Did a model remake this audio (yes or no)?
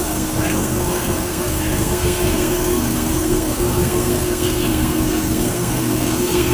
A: yes